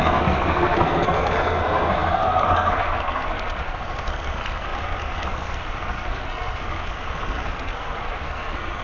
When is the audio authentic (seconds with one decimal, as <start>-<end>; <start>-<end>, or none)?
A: none